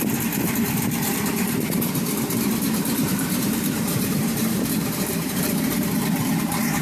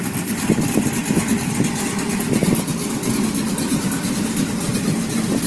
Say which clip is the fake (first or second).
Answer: first